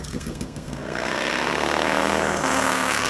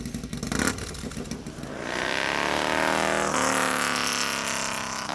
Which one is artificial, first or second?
first